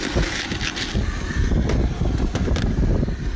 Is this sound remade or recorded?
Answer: recorded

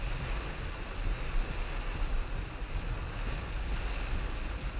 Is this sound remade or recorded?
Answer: recorded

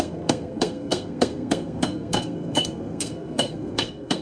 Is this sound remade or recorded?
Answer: remade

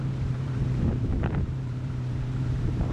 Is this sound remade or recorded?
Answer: remade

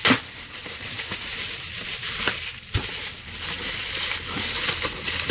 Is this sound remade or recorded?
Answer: remade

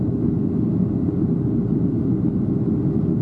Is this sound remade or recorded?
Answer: recorded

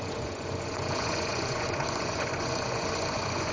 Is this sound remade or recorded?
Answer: remade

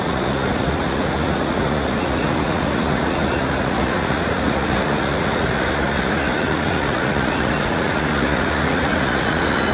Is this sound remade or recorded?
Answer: remade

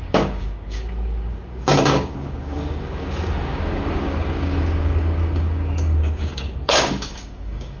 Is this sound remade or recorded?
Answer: remade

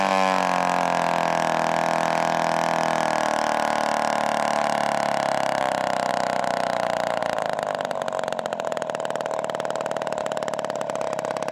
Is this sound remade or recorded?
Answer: recorded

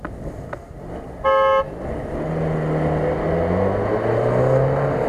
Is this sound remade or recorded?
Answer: recorded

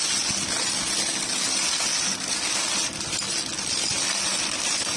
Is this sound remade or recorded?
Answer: recorded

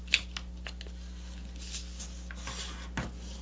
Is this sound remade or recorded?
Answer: recorded